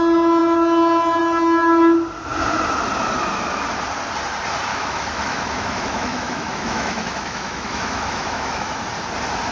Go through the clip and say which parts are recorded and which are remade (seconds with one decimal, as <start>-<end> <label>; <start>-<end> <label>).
0.0-4.7 recorded; 4.7-8.8 remade; 8.8-9.5 recorded